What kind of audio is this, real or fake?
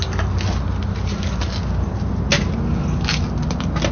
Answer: real